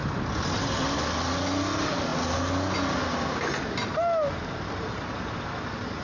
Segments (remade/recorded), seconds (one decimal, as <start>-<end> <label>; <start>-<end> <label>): 0.0-6.0 recorded